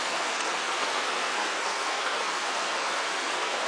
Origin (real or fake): fake